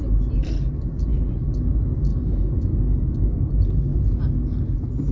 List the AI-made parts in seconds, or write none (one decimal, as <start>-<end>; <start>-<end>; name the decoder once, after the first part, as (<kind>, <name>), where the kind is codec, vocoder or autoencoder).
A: 2.1-3.5 (codec, DAC)